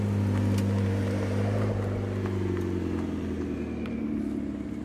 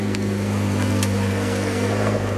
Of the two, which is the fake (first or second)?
second